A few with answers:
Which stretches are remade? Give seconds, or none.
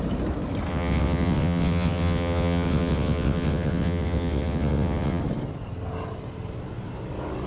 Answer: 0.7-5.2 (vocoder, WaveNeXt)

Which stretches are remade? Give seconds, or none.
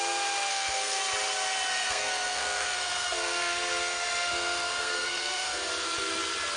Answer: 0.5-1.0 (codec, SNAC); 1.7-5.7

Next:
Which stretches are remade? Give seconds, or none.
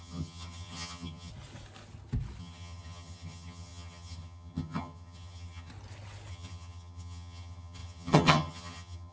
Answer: 0.0-1.3 (vocoder, HiFi-GAN); 2.4-5.7; 6.3-9.1